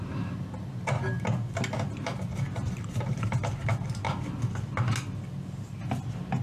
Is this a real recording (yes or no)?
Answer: yes